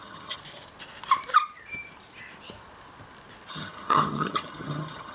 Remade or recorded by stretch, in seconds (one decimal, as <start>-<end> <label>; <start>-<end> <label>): 0.0-0.4 remade; 0.4-3.5 recorded; 3.5-5.1 remade

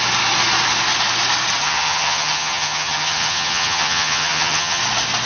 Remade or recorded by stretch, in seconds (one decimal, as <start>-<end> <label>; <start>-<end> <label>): 0.0-1.6 recorded; 1.6-4.8 remade; 4.8-5.3 recorded

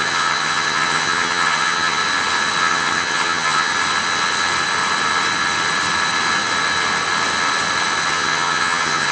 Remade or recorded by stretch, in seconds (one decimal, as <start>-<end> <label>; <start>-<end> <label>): 0.0-2.0 remade; 2.0-2.6 recorded; 2.6-3.7 remade; 3.7-8.1 recorded; 8.1-9.1 remade